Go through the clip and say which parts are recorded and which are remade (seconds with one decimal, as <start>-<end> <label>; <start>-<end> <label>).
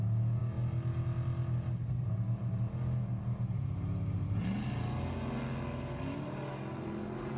0.0-7.4 recorded